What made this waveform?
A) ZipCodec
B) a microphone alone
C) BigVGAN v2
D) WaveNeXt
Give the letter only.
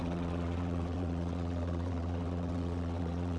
D